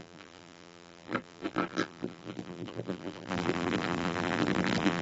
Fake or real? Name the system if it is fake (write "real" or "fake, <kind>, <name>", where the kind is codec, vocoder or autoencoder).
fake, vocoder, BigVGAN v2